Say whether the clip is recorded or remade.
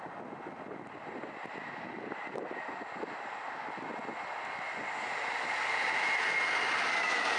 recorded